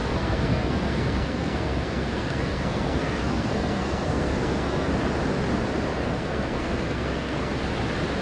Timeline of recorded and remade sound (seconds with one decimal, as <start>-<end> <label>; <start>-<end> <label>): 0.0-4.9 remade; 4.9-5.9 recorded; 5.9-7.5 remade; 7.5-8.2 recorded